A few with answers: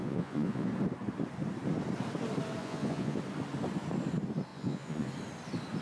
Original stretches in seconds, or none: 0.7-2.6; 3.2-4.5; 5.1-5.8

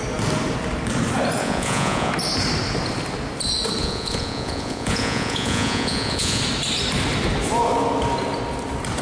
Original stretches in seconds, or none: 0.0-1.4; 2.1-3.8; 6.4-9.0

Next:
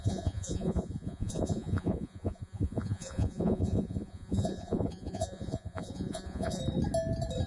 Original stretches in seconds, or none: 6.6-7.5

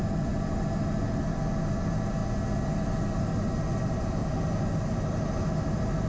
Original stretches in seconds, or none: 0.0-6.1

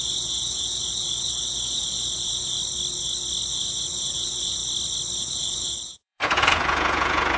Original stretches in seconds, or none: 2.6-3.5; 4.6-5.2